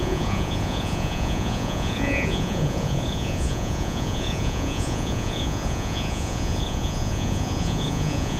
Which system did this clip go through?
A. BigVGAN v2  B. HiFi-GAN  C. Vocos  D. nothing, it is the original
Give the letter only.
C